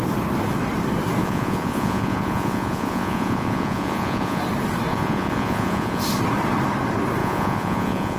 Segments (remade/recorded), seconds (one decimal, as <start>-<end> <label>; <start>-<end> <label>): 0.0-1.2 recorded; 1.2-4.4 remade; 4.4-4.9 recorded; 4.9-6.0 remade; 6.0-7.2 recorded; 7.2-8.2 remade